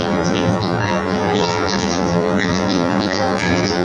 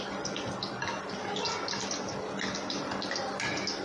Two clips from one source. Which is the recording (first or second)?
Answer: second